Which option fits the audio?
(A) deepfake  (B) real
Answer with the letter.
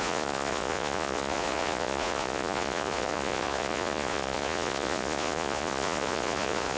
A